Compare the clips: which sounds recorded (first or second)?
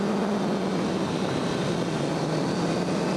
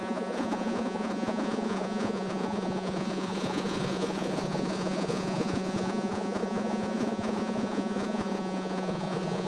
first